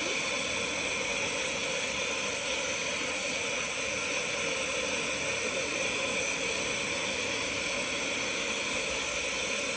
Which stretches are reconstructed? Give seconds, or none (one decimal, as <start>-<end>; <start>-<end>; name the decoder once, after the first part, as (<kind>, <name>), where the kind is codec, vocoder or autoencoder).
none